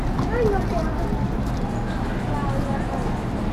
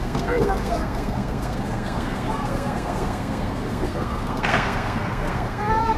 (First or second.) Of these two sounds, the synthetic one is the second